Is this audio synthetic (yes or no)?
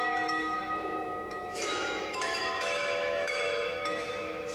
yes